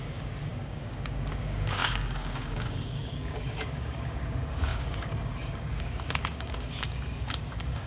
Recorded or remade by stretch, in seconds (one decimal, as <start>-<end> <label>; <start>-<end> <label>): 0.0-7.9 remade